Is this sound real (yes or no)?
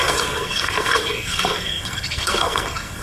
no